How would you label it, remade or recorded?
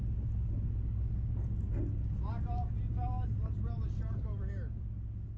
recorded